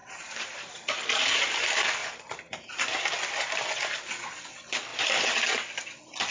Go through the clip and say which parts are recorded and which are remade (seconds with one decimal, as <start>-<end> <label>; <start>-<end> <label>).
0.0-0.7 remade; 0.7-2.0 recorded; 2.0-3.1 remade; 3.1-4.9 recorded; 4.9-5.4 remade; 5.4-6.3 recorded